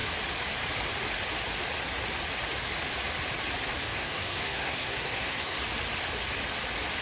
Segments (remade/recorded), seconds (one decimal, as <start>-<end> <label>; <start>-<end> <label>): 0.0-3.9 recorded; 3.9-5.6 remade; 5.6-7.0 recorded